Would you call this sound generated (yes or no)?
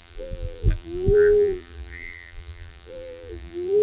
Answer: yes